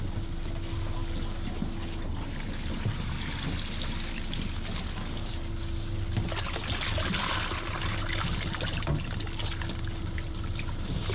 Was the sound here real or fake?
real